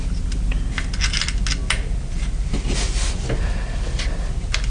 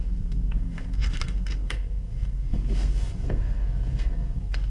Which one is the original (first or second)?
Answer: first